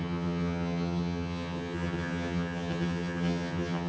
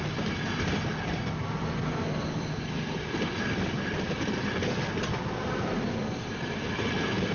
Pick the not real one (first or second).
first